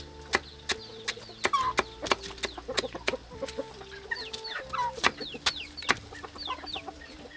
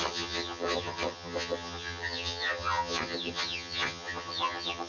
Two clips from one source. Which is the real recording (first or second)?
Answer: first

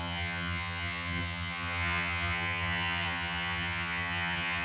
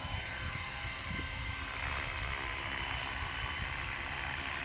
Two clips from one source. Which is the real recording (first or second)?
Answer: second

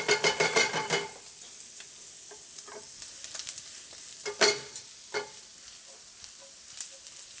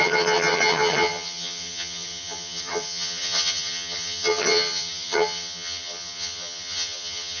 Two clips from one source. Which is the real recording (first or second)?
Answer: first